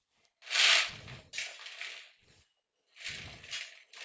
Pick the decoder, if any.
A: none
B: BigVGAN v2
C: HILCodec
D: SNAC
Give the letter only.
A